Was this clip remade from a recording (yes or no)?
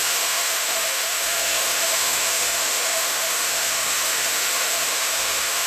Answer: yes